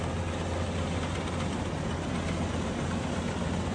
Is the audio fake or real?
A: real